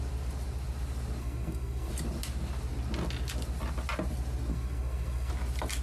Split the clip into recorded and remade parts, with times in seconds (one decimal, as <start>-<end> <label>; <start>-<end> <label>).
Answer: 0.0-1.2 recorded; 1.2-1.9 remade; 1.9-4.5 recorded; 4.5-5.3 remade; 5.3-5.8 recorded